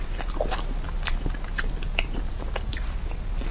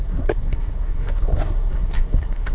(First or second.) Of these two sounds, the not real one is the second